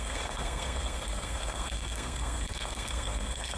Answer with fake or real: fake